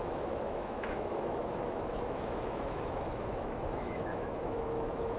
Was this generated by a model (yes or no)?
yes